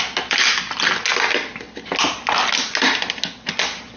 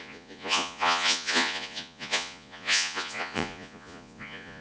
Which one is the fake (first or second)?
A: second